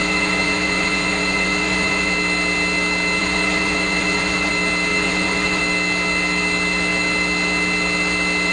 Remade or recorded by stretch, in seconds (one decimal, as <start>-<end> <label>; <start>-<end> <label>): 0.0-2.1 remade; 2.1-3.2 recorded; 3.2-4.5 remade; 4.5-4.9 recorded; 4.9-5.6 remade; 5.6-8.5 recorded